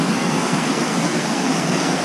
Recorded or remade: remade